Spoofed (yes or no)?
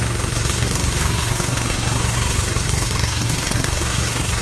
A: yes